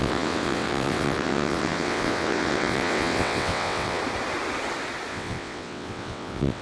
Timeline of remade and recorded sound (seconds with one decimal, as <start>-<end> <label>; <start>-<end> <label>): 0.0-4.0 remade; 4.0-5.1 recorded; 5.1-6.6 remade